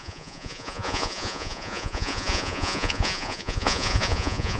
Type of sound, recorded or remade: remade